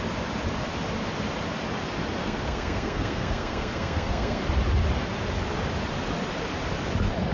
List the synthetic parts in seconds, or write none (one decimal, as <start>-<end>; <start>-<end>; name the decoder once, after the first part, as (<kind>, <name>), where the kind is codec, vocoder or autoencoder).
2.2-4.4 (codec, SNAC)